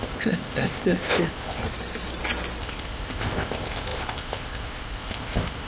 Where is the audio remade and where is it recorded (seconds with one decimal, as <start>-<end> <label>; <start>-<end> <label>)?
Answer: 0.0-1.6 remade; 1.6-2.6 recorded; 2.6-5.7 remade